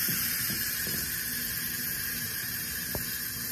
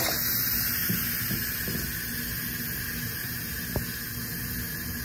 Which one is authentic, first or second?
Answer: second